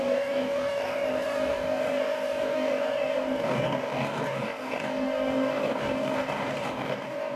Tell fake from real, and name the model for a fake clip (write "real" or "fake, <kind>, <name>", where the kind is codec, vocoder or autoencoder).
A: fake, codec, DAC